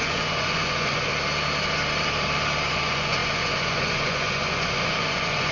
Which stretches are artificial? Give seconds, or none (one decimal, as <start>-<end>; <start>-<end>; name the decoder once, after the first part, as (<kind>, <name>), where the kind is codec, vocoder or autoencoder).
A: 0.0-1.1 (vocoder, Vocos); 2.7-5.5